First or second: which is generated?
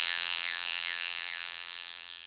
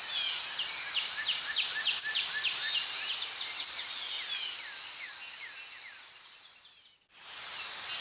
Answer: first